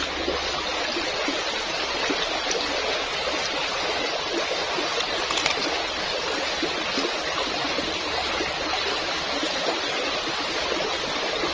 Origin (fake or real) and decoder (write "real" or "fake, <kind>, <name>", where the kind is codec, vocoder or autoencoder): real